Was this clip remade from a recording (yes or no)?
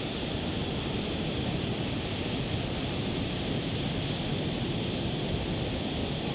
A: no